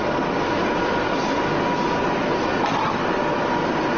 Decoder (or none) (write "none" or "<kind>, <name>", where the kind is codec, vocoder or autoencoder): none